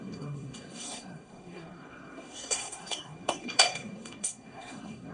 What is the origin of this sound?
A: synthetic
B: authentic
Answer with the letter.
A